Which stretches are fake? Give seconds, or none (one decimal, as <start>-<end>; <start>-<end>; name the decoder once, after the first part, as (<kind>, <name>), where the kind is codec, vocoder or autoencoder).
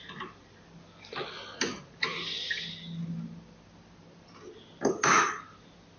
none